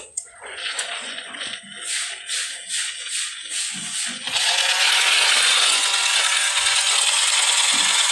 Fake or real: fake